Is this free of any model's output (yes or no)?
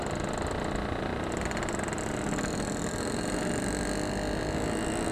yes